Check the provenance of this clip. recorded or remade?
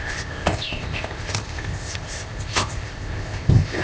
remade